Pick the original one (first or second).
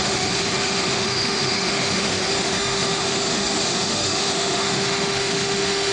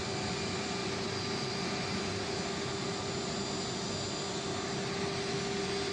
second